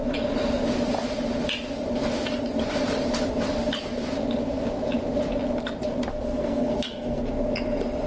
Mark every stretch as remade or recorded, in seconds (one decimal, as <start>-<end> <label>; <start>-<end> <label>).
0.0-6.1 recorded; 6.1-7.2 remade; 7.2-8.1 recorded